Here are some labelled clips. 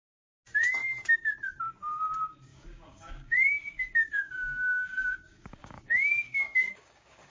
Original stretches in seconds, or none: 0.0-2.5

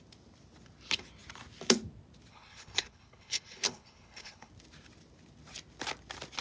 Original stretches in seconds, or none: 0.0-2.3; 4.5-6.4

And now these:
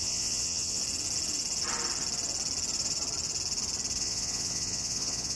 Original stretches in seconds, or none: 0.8-4.0

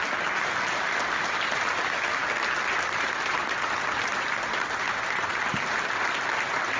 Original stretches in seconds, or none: 0.0-6.8

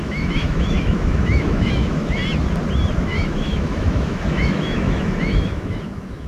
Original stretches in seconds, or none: 2.2-3.0

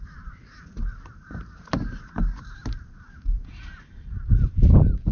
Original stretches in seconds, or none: none